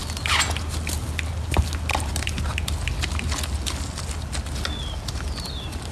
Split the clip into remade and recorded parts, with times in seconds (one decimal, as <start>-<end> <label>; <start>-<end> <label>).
0.0-5.9 recorded